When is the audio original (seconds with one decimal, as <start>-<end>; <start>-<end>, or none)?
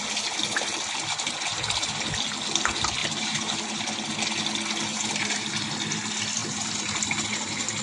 0.0-3.0; 3.8-4.9; 5.5-6.4